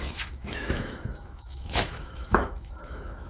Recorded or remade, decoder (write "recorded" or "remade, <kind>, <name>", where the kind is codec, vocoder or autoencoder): remade, autoencoder, DAC-VAE